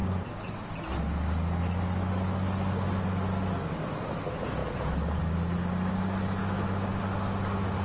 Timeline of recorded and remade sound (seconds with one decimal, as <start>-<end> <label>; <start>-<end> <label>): 0.0-6.4 recorded; 6.4-7.0 remade; 7.0-7.8 recorded